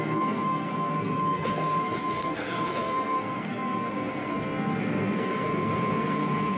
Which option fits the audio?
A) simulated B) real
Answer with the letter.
A